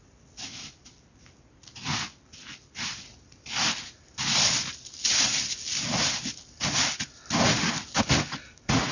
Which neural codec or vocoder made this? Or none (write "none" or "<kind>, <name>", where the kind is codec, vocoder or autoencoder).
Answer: none